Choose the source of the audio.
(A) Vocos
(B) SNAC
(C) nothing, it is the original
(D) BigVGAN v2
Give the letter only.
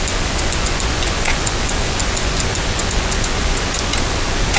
A